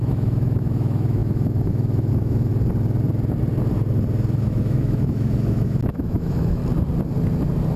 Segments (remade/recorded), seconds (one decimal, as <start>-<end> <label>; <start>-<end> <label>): 0.0-2.5 remade; 2.5-4.4 recorded; 4.4-6.6 remade; 6.6-7.8 recorded